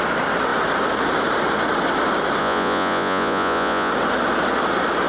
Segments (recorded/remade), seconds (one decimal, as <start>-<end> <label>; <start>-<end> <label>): 0.0-2.4 recorded; 2.4-3.9 remade; 3.9-5.1 recorded